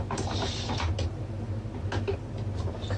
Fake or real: real